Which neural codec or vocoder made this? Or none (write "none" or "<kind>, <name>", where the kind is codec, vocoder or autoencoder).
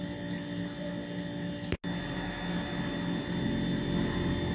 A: none